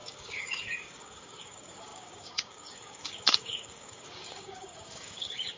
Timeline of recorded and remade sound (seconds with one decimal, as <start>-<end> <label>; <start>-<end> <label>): 0.0-5.6 remade